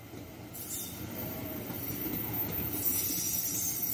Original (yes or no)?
yes